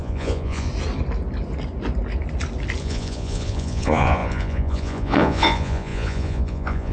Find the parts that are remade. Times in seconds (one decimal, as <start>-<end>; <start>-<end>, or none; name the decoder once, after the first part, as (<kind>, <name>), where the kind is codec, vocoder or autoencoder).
0.0-0.7 (vocoder, Vocos); 2.8-6.9